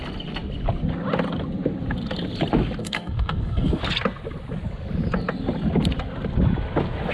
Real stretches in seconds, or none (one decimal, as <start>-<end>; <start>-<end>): 0.0-2.8; 3.8-7.1